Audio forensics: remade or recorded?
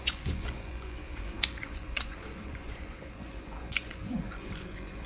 remade